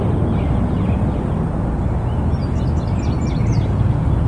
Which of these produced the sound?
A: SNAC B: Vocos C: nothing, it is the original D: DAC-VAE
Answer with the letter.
C